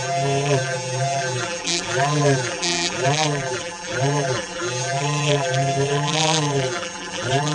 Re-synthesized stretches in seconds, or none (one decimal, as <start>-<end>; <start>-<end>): 0.0-7.5